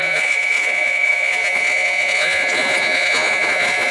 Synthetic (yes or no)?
yes